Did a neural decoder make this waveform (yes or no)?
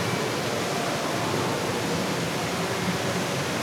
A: no